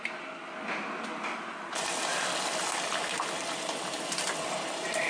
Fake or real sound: real